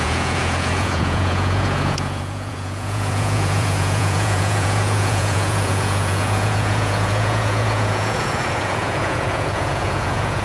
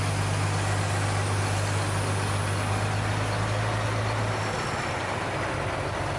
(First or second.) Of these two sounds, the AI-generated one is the first